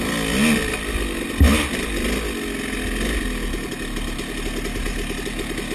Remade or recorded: recorded